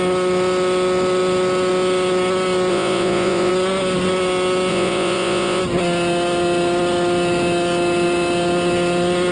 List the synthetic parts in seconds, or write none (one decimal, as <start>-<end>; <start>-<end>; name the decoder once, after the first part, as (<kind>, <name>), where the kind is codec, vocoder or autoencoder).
2.7-3.5 (vocoder, Vocos); 4.7-5.6